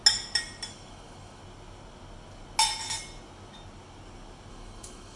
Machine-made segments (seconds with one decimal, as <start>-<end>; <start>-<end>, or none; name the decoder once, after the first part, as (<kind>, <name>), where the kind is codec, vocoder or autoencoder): 0.7-1.4 (autoencoder, DAC-VAE); 4.5-5.2